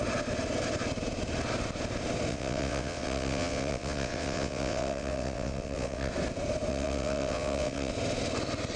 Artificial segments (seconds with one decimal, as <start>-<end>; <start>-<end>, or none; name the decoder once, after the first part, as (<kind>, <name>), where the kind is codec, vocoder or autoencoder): 2.3-6.1 (vocoder, WaveNeXt); 6.7-7.9

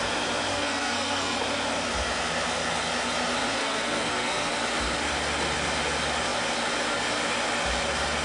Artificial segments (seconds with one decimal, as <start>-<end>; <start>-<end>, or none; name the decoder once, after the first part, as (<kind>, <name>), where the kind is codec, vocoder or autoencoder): 0.5-1.4 (codec, SNAC); 3.6-4.5